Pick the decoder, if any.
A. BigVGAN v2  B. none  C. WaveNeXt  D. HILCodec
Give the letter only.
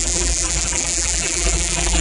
A